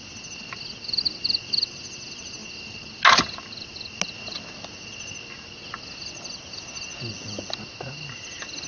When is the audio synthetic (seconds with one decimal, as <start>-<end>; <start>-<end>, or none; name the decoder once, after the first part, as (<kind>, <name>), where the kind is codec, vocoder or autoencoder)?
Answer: none